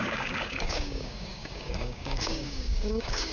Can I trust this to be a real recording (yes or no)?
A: no